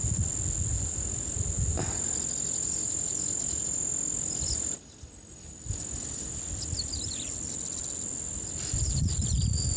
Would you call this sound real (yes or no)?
yes